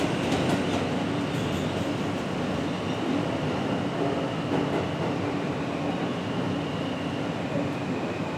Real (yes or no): yes